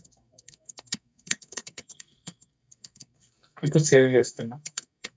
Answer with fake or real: fake